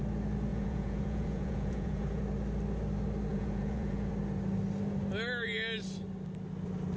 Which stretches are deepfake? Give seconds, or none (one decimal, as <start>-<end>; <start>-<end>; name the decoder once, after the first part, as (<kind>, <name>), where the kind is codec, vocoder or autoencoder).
0.5-2.2 (vocoder, Vocos); 3.3-4.1

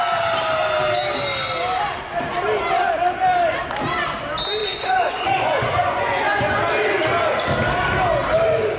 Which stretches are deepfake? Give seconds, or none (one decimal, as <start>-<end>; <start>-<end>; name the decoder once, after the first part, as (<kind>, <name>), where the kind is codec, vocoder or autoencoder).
4.6-6.6 (vocoder, Vocos)